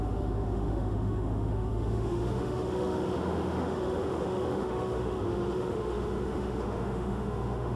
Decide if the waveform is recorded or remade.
remade